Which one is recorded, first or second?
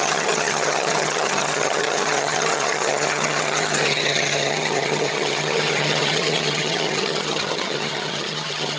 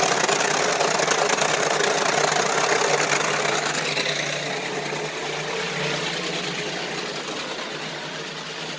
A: second